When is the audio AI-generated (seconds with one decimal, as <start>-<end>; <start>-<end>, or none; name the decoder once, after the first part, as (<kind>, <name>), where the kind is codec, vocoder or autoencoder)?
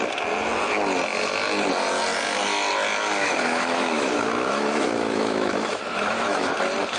3.2-6.6 (autoencoder, DAC-VAE)